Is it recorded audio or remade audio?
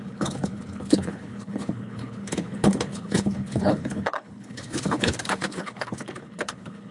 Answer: remade